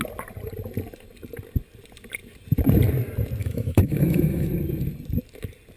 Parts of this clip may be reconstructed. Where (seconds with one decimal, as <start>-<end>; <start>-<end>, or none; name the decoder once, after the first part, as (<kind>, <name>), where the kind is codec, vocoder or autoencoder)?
3.4-4.5 (autoencoder, DAC-VAE)